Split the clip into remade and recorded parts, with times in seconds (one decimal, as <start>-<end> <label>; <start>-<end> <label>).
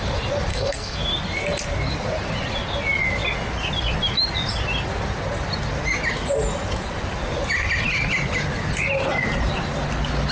0.0-0.5 recorded; 0.5-1.0 remade; 1.0-10.3 recorded